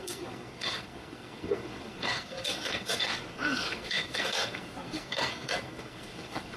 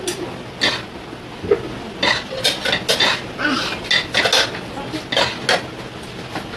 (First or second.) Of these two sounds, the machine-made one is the first